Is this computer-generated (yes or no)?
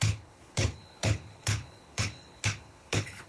yes